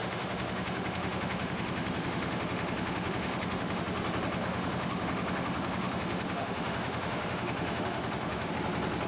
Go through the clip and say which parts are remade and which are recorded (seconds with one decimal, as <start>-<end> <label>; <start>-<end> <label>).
0.0-3.8 remade; 3.8-4.4 recorded; 4.4-8.5 remade; 8.5-9.1 recorded